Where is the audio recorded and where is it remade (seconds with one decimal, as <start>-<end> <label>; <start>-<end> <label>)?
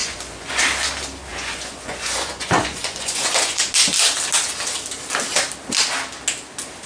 0.0-0.6 remade; 0.6-1.3 recorded; 1.3-3.6 remade; 3.6-6.9 recorded